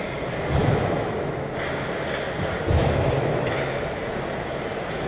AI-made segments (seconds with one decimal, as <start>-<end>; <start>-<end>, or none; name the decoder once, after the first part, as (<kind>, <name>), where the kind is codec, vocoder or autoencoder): 0.6-1.5 (autoencoder, DAC-VAE); 2.8-4.0